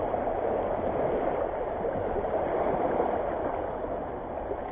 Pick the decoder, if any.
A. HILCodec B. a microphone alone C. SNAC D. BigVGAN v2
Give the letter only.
B